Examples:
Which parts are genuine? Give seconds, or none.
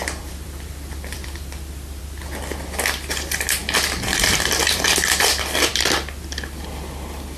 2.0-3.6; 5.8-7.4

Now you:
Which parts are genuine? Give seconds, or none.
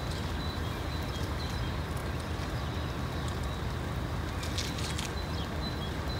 0.0-6.2